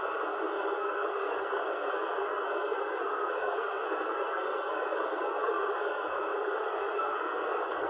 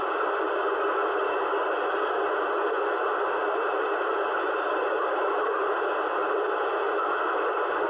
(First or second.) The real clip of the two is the second